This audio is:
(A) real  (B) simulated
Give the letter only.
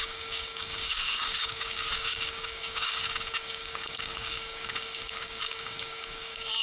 B